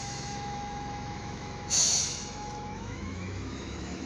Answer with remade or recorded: remade